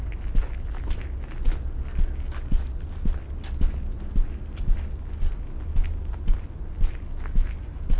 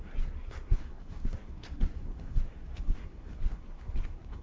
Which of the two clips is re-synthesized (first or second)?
second